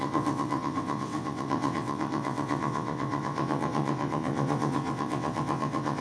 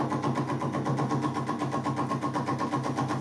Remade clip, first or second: first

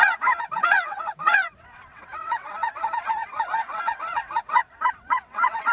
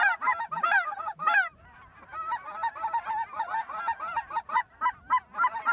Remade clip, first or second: first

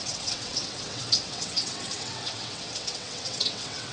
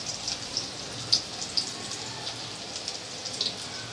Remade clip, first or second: first